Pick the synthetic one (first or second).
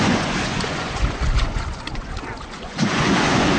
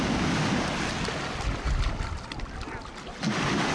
first